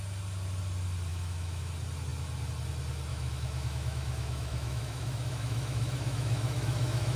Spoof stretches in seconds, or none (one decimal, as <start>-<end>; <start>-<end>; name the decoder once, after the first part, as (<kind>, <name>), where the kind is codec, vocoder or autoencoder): 1.1-1.7 (autoencoder, DAC-VAE); 3.1-7.2